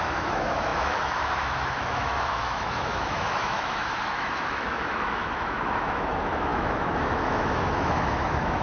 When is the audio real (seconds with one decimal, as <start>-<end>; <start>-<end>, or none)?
none